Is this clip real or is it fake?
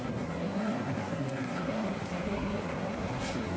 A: fake